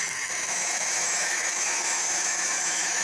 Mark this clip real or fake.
fake